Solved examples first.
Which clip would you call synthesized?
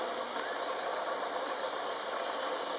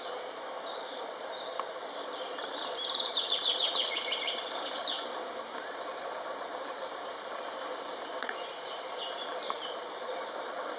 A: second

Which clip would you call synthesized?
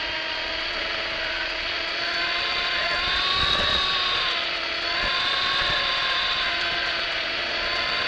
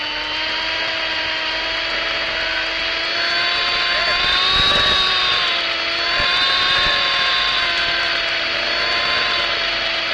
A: first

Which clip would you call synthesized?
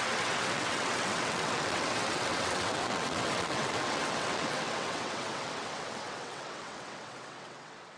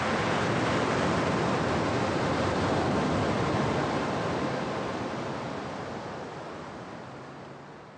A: first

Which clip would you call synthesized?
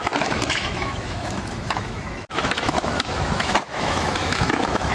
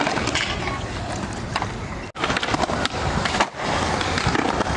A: first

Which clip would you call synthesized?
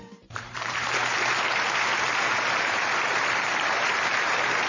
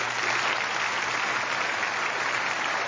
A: first